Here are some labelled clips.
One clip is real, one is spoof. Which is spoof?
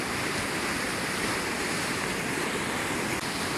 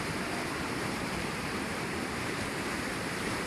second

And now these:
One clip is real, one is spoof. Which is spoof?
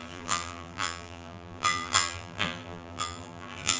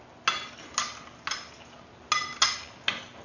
first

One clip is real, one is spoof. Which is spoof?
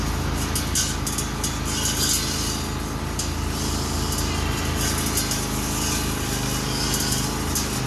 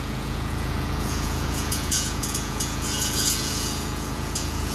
second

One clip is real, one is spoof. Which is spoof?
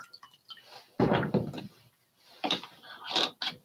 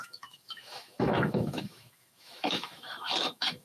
second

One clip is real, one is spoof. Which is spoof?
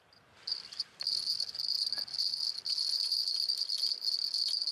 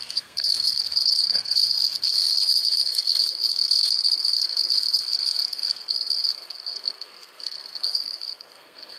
second